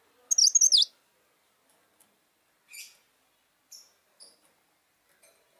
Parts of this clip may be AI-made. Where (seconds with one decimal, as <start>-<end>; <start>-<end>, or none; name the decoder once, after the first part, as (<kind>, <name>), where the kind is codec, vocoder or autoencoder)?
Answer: none